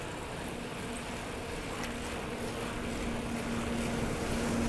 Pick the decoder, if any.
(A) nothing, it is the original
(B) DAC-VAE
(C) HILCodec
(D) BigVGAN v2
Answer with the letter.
A